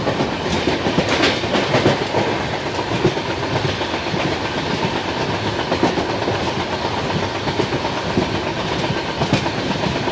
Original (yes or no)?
yes